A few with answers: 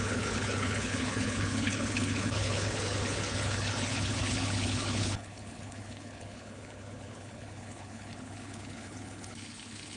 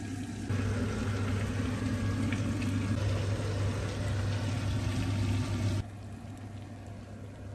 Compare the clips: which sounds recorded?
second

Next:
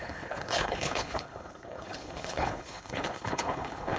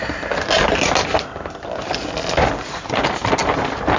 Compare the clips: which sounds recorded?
second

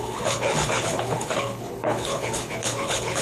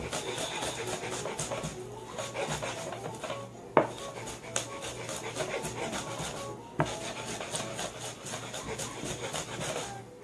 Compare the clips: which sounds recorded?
second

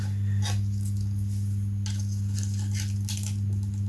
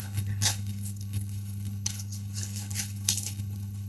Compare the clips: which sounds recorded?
first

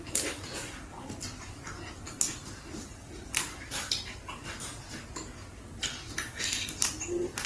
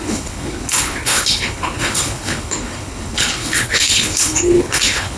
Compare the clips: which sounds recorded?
first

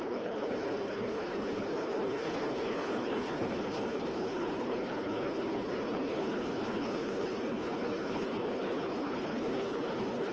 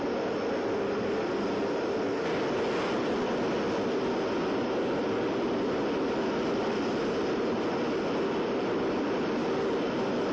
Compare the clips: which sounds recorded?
second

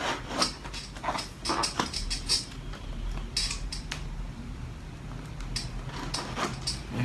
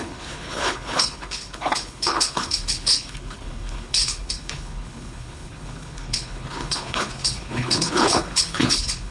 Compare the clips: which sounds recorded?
first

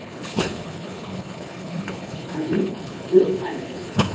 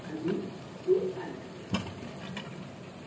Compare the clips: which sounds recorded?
second